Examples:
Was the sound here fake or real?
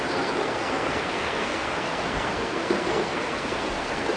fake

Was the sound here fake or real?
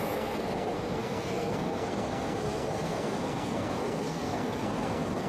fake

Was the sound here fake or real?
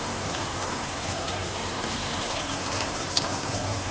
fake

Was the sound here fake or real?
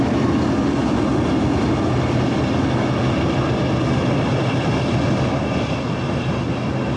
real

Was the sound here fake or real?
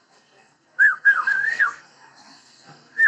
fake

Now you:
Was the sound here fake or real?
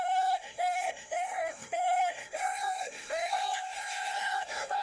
fake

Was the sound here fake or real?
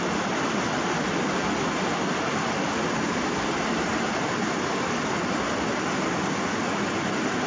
real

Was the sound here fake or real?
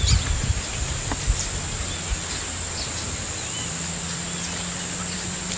real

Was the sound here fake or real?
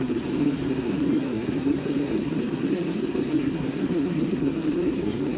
fake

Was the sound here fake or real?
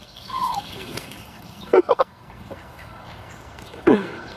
fake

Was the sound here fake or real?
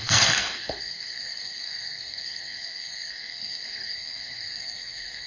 fake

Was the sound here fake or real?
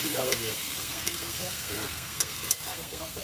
fake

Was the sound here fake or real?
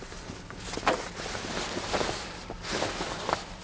real